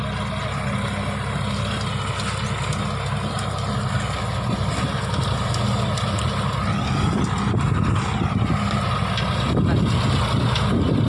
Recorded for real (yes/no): yes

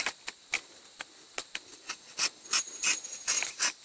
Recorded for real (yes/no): yes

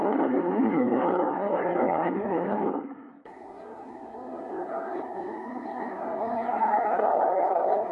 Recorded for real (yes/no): no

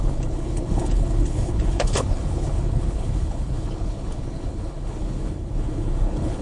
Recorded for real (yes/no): no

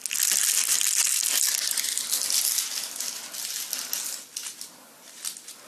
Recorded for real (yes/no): yes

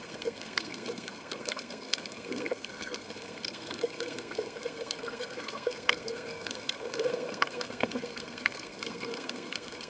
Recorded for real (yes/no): no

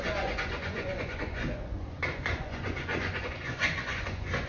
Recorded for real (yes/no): no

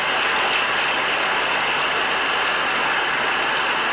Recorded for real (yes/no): yes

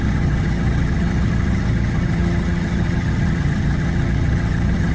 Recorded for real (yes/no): no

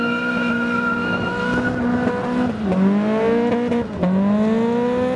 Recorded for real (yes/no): yes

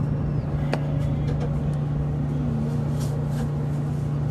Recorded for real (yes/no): yes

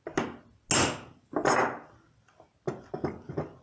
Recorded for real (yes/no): yes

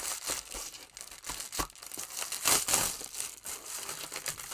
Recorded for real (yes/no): yes